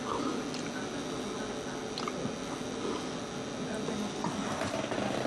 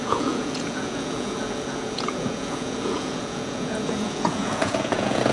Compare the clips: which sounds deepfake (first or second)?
second